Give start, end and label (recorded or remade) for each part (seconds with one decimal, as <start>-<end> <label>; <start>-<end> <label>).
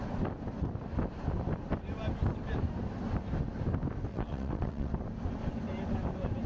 0.0-4.1 recorded; 4.1-4.9 remade; 4.9-6.5 recorded